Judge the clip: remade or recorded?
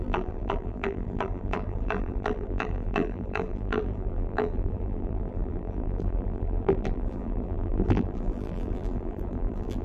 remade